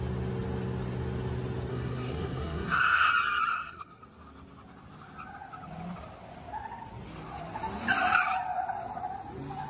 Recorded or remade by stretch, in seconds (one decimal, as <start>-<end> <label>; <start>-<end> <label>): 0.0-1.7 recorded; 1.7-3.1 remade; 3.1-3.5 recorded; 3.5-4.0 remade; 4.0-9.7 recorded